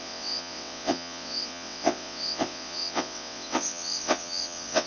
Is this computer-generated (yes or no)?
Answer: yes